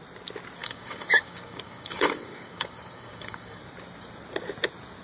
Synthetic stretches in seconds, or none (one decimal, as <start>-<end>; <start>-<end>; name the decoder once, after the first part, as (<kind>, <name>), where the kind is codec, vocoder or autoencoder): 0.6-3.6 (codec, DAC)